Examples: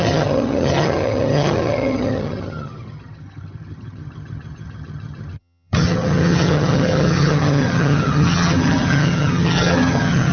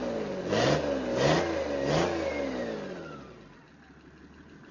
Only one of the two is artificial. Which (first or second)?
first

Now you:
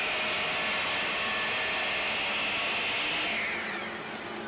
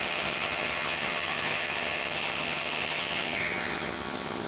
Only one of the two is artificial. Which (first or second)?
second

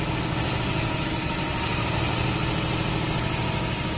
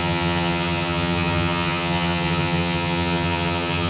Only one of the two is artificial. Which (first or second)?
second